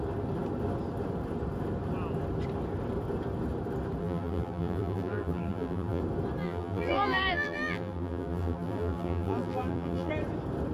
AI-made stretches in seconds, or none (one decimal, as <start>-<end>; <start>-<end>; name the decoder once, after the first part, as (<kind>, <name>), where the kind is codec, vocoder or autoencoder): 4.0-6.0 (vocoder, BigVGAN v2); 6.4-10.1